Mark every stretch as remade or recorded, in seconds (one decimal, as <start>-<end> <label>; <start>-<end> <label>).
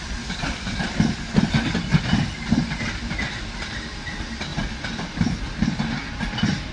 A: 0.0-6.7 recorded